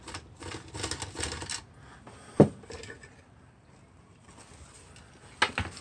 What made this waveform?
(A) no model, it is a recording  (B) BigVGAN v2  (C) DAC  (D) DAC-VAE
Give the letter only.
A